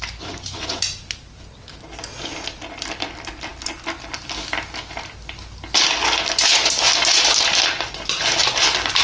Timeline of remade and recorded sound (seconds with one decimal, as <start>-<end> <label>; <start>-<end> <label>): 0.0-9.0 recorded

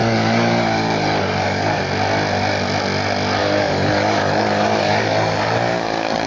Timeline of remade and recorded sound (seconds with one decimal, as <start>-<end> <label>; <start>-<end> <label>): 0.0-1.8 remade; 1.8-3.4 recorded; 3.4-6.3 remade

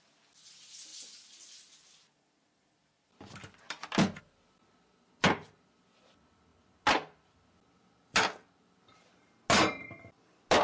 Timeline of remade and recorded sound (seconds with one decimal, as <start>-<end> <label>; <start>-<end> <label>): 0.0-10.6 recorded